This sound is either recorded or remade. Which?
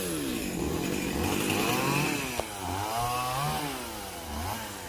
recorded